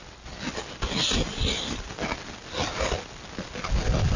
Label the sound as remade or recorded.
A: recorded